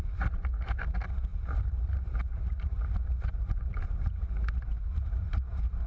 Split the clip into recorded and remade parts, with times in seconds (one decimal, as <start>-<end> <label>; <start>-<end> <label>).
0.0-1.3 recorded; 1.3-3.8 remade; 3.8-4.7 recorded; 4.7-5.9 remade